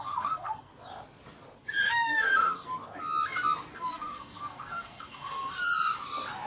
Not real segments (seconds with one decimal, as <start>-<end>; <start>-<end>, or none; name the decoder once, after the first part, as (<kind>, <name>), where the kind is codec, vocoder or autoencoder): 0.0-0.7 (codec, SNAC); 1.8-2.7; 3.7-5.6